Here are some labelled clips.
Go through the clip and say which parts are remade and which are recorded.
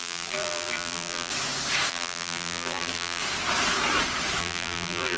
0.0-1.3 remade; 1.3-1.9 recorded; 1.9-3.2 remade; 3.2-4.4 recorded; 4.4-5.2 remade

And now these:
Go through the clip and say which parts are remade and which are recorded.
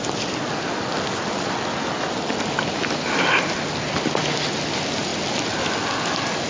0.0-6.5 recorded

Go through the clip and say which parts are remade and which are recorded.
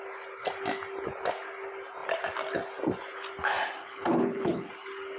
0.0-3.8 recorded; 3.8-4.7 remade; 4.7-5.2 recorded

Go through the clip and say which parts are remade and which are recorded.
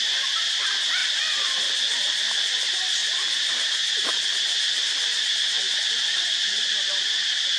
0.0-3.0 recorded; 3.0-4.1 remade; 4.1-7.6 recorded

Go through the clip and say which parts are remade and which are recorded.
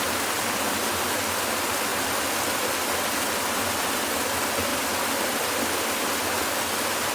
0.0-7.1 recorded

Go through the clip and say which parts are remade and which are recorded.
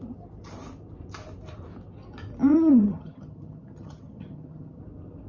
0.0-2.5 recorded; 2.5-4.8 remade; 4.8-5.3 recorded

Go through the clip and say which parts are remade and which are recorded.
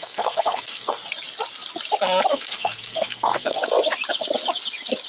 0.0-1.0 remade; 1.0-2.3 recorded; 2.3-3.6 remade; 3.6-5.1 recorded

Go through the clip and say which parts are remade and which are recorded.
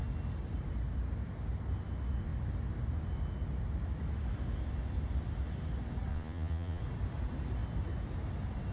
0.0-6.1 recorded; 6.1-6.8 remade; 6.8-8.7 recorded